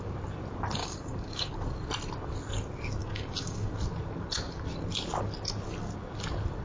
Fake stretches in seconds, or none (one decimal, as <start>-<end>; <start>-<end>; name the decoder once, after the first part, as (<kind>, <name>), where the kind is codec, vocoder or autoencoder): 0.8-1.5 (codec, DAC); 3.0-3.7

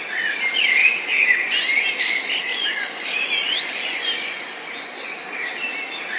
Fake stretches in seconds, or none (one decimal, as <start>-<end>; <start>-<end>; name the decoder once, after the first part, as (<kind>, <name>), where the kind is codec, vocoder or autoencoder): 0.8-2.0 (vocoder, Vocos); 2.5-5.1

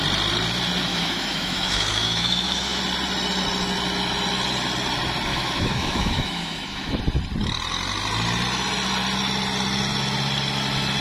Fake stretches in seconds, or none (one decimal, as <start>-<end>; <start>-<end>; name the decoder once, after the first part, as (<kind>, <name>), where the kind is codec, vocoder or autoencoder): 0.9-2.8 (autoencoder, DAC-VAE); 5.3-7.0

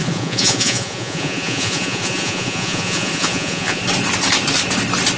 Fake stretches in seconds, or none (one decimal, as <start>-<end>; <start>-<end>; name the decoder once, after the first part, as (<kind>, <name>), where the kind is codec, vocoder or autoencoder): 0.0-3.8 (vocoder, Vocos)